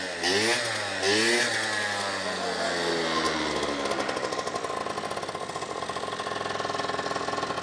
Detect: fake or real real